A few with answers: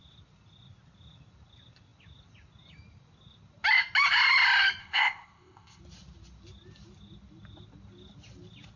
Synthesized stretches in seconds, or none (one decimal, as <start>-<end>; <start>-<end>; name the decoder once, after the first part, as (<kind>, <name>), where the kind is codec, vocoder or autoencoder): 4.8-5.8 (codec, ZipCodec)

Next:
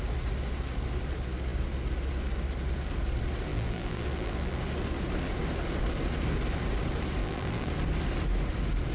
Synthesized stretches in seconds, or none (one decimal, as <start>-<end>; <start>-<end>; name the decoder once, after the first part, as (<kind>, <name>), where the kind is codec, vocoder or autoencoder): 3.5-4.6 (vocoder, BigVGAN v2); 7.2-7.7

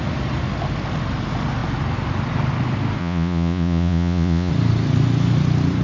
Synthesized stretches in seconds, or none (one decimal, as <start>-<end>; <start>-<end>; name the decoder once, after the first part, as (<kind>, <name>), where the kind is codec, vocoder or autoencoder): 3.0-4.5 (vocoder, Vocos)